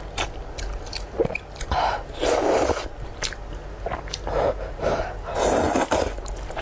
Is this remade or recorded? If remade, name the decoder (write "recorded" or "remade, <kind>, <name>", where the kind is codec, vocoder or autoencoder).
recorded